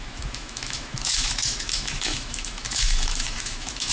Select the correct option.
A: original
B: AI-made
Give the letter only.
B